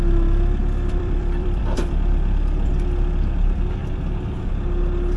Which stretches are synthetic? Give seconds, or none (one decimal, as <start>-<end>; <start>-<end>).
0.6-2.7; 3.8-4.5